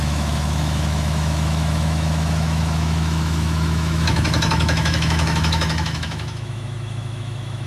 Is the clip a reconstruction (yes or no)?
yes